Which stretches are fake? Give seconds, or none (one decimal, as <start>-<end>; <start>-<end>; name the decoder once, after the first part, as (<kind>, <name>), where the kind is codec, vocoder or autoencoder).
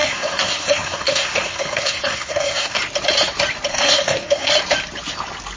0.0-2.8 (codec, SNAC); 3.7-4.5